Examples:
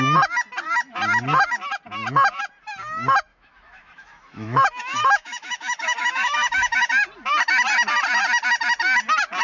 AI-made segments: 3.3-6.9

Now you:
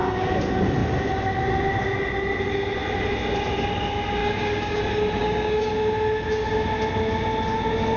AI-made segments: 4.2-4.8; 5.2-5.7

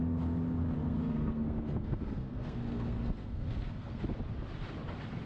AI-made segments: 0.8-4.0

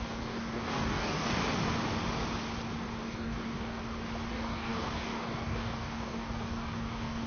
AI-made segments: 0.0-1.4; 3.0-3.8; 4.3-7.3

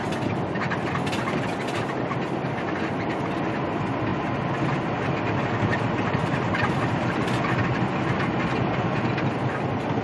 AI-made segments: 5.7-7.2

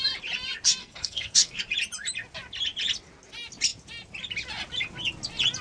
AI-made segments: 0.8-1.6

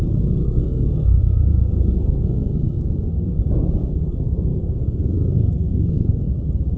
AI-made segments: 0.4-3.4; 3.8-6.3